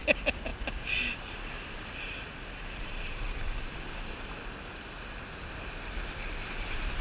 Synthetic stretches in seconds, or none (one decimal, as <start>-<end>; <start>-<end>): none